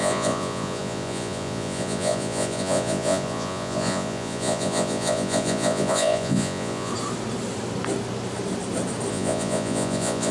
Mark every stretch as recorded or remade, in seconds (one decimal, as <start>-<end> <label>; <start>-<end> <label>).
0.0-6.9 remade; 6.9-9.1 recorded; 9.1-10.3 remade